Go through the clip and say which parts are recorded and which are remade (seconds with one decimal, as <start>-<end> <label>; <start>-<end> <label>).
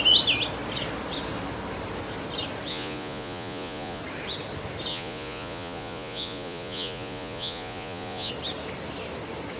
0.0-2.7 recorded; 2.7-4.0 remade; 4.0-4.9 recorded; 4.9-8.3 remade; 8.3-9.6 recorded